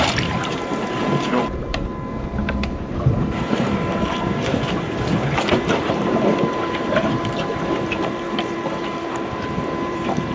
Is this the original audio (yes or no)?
no